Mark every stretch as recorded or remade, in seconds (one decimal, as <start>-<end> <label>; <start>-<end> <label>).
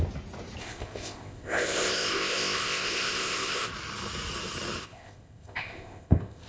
0.0-0.6 recorded; 0.6-3.7 remade; 3.7-4.8 recorded; 4.8-6.5 remade